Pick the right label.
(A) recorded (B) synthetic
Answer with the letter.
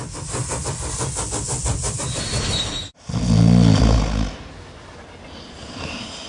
A